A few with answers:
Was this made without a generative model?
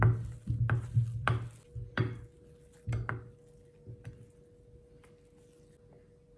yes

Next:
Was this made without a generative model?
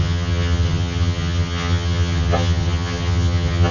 no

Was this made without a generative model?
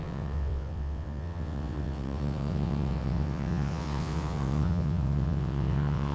no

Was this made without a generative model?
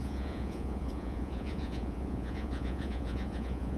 no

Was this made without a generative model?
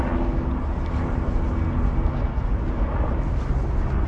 yes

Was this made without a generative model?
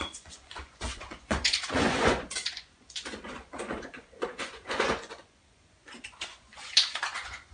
no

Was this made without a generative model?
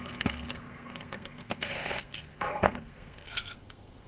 no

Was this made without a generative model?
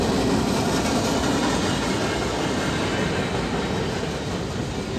yes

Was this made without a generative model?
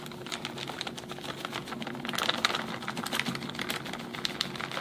yes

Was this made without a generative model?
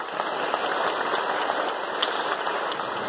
yes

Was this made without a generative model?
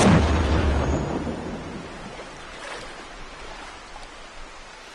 yes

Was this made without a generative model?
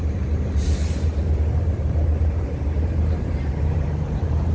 no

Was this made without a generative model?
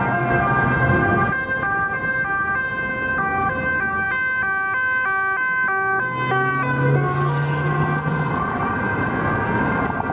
yes